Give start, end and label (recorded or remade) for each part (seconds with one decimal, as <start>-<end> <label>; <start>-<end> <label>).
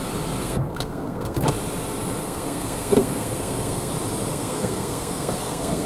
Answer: 0.0-0.4 recorded; 0.4-1.5 remade; 1.5-2.2 recorded; 2.2-3.9 remade; 3.9-4.3 recorded; 4.3-5.9 remade